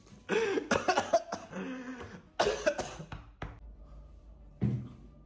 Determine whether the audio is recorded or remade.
recorded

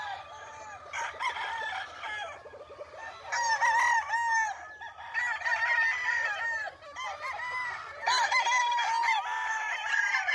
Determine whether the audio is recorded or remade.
recorded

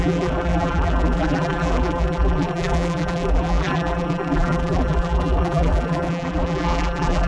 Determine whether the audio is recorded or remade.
remade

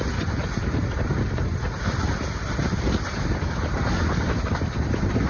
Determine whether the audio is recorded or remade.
remade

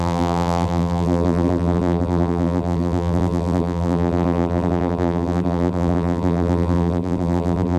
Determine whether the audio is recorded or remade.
remade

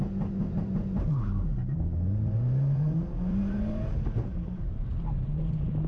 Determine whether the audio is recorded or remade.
remade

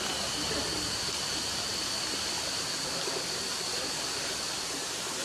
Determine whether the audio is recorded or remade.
recorded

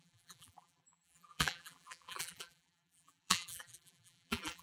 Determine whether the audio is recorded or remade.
remade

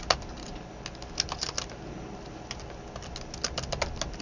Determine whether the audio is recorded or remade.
recorded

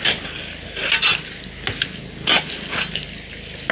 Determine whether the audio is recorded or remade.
recorded